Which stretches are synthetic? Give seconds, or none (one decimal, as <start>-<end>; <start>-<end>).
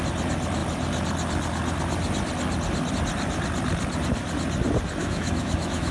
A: 5.0-5.9